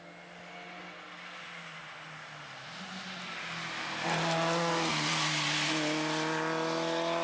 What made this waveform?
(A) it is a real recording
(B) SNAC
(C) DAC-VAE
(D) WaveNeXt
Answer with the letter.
A